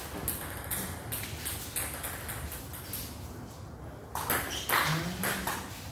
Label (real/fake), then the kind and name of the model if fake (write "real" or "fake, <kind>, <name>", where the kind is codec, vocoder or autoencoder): real